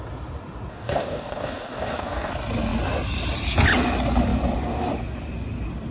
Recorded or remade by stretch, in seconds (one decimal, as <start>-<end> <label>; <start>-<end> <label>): 0.0-0.7 recorded; 0.7-2.3 remade; 2.3-5.9 recorded